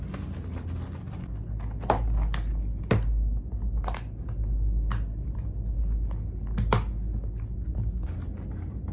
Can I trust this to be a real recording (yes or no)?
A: yes